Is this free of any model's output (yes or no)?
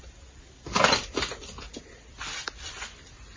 yes